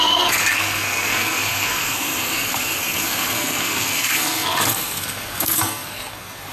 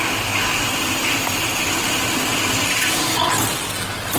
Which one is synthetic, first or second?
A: first